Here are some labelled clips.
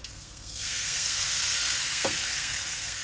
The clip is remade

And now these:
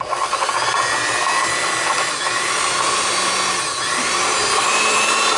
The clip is recorded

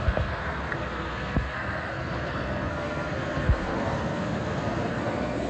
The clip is remade